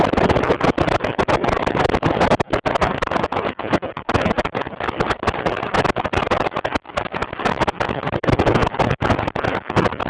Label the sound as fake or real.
real